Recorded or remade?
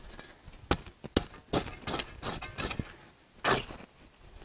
recorded